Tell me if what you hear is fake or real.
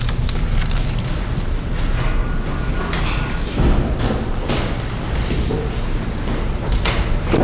real